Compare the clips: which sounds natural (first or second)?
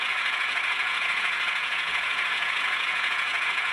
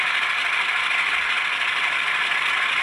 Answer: second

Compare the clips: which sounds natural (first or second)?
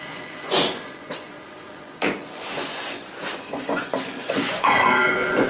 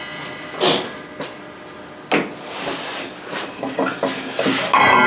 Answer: second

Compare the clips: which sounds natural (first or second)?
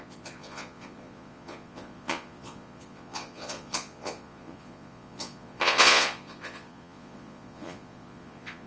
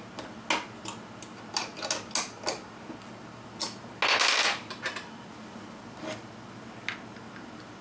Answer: second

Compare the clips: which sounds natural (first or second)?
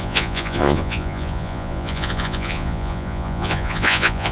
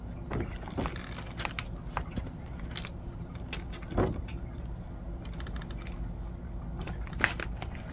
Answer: second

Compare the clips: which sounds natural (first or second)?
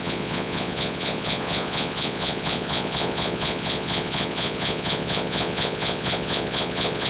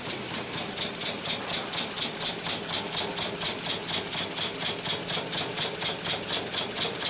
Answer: second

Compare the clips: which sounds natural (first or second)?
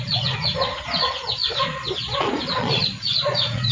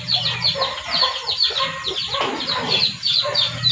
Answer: second